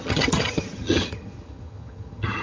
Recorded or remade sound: remade